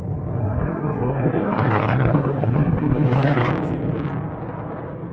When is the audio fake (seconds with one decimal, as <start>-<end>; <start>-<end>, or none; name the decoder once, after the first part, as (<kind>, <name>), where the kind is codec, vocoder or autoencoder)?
0.4-3.5 (codec, SNAC)